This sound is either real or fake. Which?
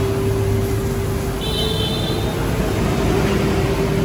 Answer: real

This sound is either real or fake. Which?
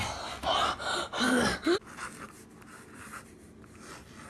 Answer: real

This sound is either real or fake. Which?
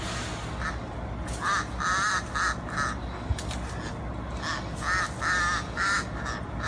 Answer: real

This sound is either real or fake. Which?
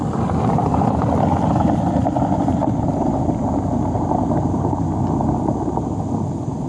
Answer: fake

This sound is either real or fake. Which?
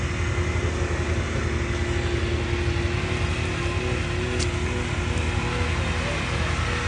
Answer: real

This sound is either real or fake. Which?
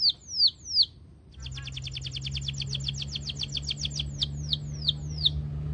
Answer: real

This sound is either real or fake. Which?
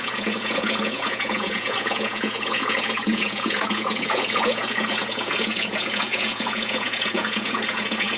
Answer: fake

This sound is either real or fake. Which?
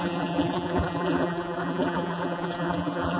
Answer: fake